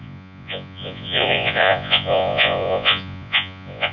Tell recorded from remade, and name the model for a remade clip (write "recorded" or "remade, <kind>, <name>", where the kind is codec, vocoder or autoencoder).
remade, vocoder, Vocos